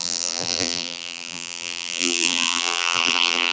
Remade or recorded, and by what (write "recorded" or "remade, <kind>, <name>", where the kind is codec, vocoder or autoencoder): remade, vocoder, BigVGAN v2